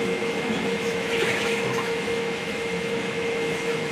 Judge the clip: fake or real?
fake